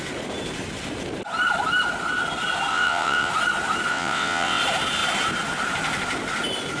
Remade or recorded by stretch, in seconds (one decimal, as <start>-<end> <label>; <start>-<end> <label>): 0.0-2.7 recorded; 2.7-3.3 remade; 3.3-3.9 recorded; 3.9-4.6 remade; 4.6-6.8 recorded